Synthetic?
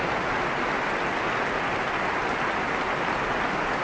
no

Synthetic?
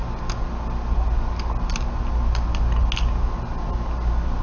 no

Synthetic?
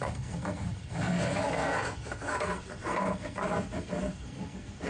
yes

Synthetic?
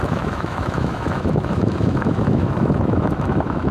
yes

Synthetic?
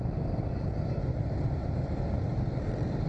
no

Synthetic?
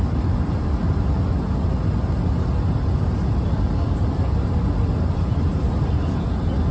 no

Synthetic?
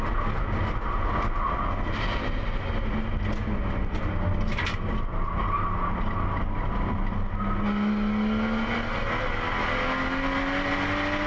no